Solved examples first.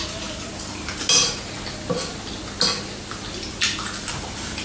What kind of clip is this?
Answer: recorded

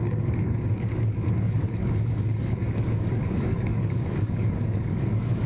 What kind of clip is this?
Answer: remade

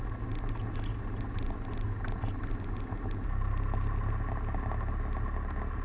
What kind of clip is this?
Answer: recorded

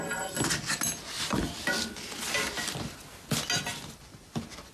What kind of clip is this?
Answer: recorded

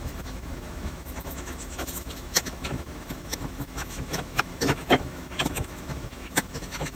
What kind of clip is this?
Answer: remade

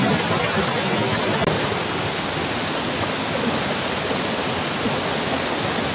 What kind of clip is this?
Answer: recorded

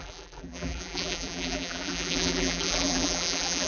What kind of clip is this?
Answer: remade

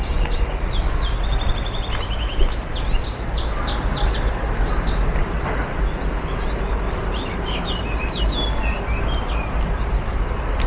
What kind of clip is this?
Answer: recorded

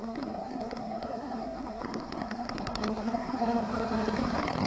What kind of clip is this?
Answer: remade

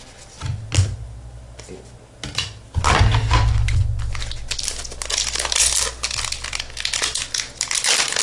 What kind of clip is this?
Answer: recorded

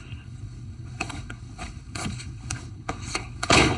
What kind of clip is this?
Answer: remade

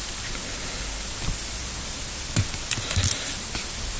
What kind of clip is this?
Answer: recorded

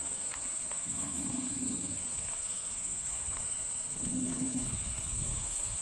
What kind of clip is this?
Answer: remade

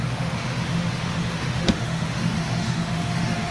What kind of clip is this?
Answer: remade